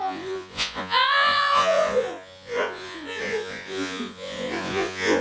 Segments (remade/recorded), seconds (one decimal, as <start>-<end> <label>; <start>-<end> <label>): 0.0-5.2 remade